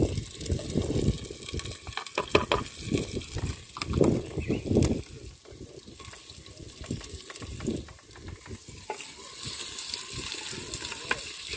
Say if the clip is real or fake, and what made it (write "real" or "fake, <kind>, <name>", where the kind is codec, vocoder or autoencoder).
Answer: real